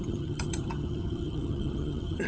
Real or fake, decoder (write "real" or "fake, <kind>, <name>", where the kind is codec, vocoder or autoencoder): fake, vocoder, HiFi-GAN